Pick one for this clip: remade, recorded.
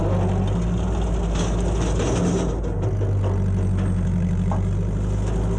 recorded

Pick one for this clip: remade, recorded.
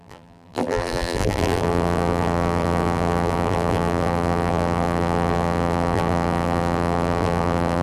remade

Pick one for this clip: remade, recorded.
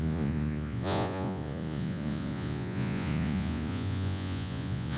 remade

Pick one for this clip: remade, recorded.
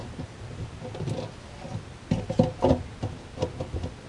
recorded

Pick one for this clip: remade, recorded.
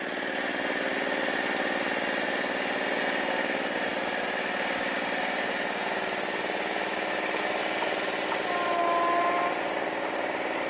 recorded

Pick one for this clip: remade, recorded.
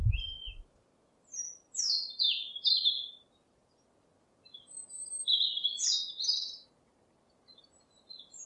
recorded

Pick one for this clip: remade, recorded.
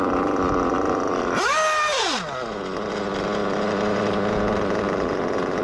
recorded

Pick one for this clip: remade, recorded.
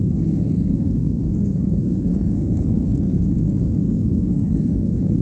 remade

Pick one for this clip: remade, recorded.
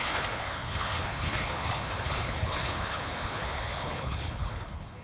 remade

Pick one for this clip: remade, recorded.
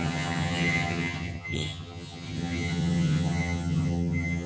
remade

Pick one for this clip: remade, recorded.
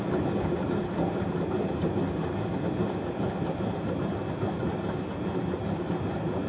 recorded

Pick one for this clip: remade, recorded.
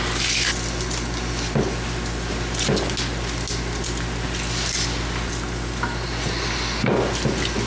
recorded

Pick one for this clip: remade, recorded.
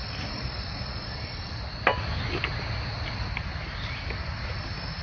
recorded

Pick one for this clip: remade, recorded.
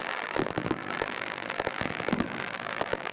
remade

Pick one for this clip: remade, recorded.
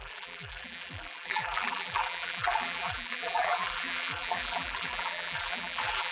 remade